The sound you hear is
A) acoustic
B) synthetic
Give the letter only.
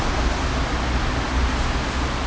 A